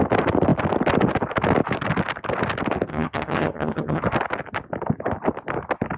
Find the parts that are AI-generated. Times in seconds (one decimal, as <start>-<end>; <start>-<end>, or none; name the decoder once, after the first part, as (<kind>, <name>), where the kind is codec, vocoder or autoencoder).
2.9-4.0 (vocoder, HiFi-GAN)